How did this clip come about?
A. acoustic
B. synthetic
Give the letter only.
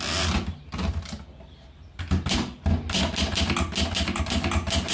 A